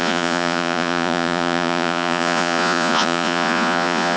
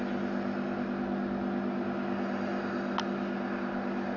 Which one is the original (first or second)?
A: second